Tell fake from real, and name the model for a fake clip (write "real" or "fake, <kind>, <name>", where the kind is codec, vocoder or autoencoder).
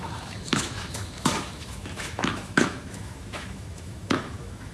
fake, autoencoder, DAC-VAE